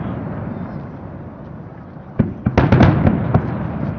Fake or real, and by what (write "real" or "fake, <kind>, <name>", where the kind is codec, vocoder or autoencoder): real